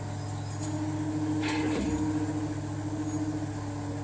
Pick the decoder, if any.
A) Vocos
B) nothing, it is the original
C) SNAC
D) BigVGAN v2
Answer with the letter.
B